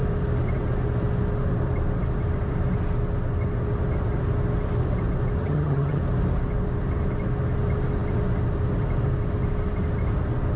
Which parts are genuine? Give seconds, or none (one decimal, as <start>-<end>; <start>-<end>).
0.0-5.4; 6.0-10.6